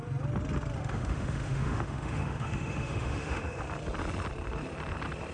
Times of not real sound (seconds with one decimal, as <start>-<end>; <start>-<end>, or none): 0.8-3.6